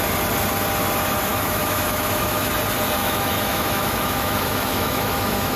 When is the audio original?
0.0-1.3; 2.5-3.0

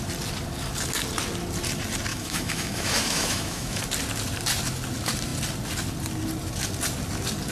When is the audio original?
0.0-2.1; 3.8-7.5

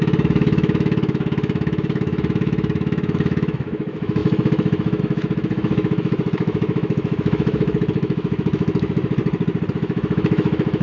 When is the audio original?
9.2-9.7